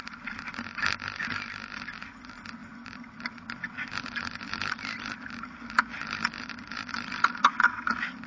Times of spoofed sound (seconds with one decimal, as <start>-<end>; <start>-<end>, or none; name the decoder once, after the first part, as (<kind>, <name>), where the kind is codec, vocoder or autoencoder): none